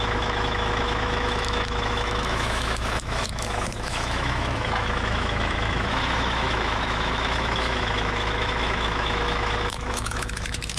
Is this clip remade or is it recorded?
remade